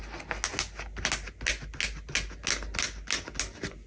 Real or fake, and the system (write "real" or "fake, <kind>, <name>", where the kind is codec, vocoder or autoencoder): real